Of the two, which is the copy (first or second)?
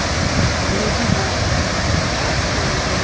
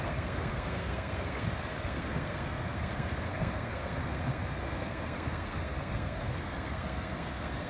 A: second